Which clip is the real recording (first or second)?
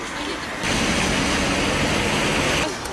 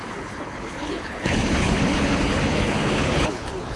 first